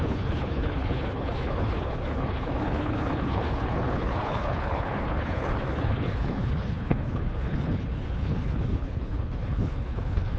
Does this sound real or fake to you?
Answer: fake